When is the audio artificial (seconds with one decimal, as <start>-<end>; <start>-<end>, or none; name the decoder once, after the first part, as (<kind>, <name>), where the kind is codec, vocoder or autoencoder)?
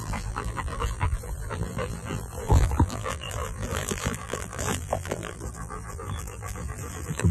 0.0-7.3 (vocoder, BigVGAN v2)